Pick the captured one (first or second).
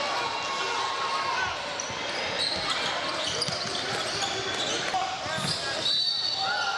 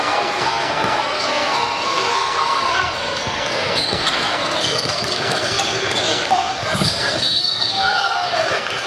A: first